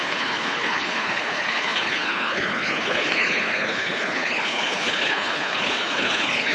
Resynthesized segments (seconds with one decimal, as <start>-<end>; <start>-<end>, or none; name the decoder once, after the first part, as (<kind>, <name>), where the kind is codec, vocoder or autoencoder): 0.0-6.5 (codec, HILCodec)